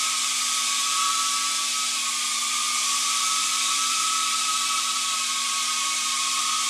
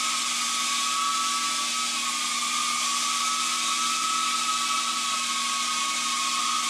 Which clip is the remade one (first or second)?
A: first